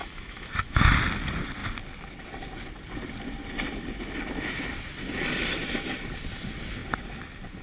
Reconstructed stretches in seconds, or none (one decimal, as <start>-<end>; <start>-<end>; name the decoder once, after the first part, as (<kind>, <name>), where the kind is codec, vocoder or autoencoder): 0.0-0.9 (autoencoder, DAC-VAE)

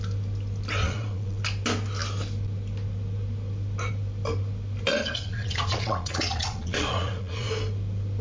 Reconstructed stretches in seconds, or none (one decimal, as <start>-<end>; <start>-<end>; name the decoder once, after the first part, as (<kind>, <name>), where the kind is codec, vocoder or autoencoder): 0.8-1.4 (vocoder, Vocos); 4.9-7.5

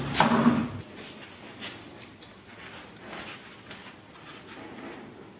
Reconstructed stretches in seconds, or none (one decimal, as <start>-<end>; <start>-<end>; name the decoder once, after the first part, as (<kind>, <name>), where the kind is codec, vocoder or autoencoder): none

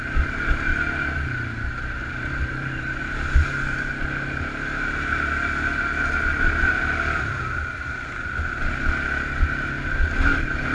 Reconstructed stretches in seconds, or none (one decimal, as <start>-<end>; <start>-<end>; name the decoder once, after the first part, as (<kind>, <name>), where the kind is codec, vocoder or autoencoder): 2.0-3.0 (vocoder, BigVGAN v2)